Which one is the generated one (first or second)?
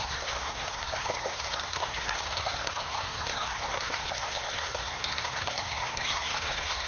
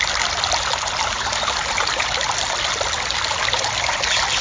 first